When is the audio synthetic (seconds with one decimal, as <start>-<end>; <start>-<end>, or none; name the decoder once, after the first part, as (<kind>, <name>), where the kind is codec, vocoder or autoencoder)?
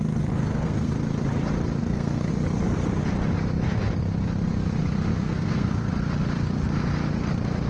0.4-0.9 (codec, SNAC); 1.8-2.3; 5.1-5.9